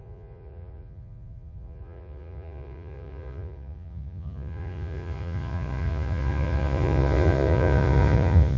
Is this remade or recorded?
remade